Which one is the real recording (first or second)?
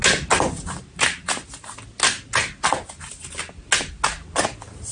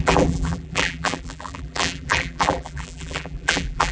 first